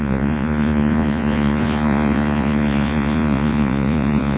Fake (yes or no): yes